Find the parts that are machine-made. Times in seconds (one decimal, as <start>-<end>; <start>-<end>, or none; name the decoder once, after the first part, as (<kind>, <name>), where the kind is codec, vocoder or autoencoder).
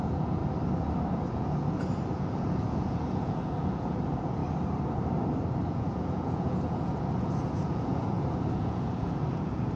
0.0-0.4 (vocoder, Vocos); 1.3-4.4; 5.7-9.8